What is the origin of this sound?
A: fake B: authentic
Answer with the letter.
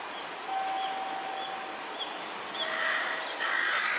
B